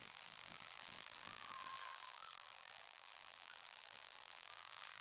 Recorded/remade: remade